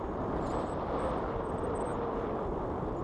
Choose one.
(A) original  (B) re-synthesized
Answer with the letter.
A